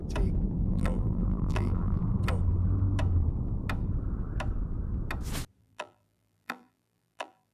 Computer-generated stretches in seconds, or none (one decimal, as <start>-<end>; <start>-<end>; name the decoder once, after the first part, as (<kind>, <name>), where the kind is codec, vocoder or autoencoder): 0.7-2.0 (vocoder, BigVGAN v2); 5.6-7.5